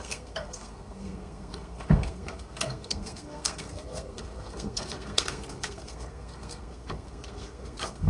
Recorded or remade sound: remade